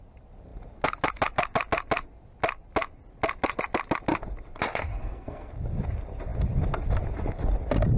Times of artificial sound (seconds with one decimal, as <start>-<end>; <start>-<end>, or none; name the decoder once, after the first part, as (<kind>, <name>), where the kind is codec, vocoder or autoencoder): 4.9-5.5 (codec, SNAC)